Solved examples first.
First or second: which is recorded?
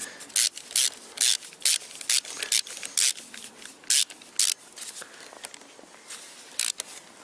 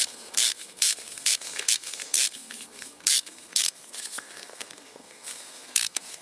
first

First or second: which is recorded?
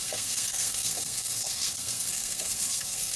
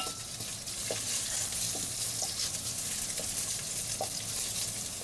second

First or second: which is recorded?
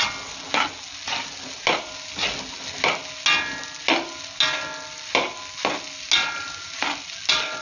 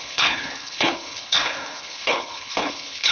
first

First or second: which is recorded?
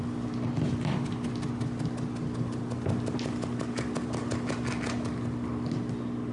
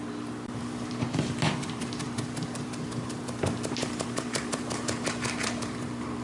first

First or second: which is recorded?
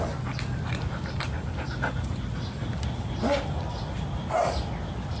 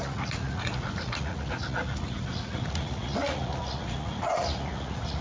first